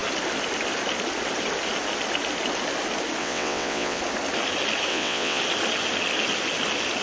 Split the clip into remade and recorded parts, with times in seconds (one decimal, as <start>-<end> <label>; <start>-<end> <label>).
0.0-3.2 recorded; 3.2-4.0 remade; 4.0-4.9 recorded; 4.9-5.4 remade; 5.4-7.0 recorded